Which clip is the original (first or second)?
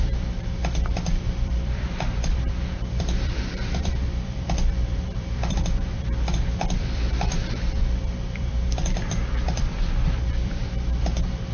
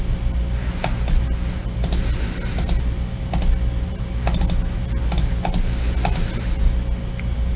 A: second